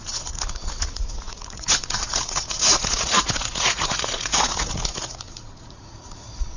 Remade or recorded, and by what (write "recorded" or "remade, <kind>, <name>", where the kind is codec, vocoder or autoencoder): remade, vocoder, Vocos